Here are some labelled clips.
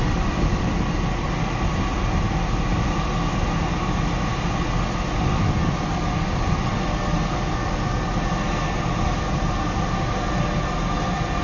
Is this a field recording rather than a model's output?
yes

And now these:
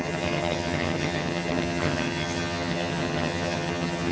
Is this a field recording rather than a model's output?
no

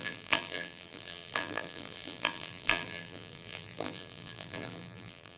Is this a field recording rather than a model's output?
no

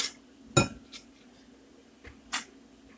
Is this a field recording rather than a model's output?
yes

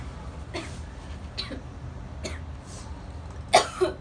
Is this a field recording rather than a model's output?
yes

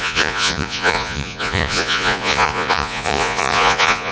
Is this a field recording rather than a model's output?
no